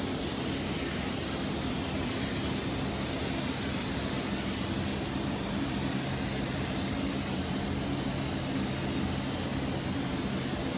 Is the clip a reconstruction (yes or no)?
no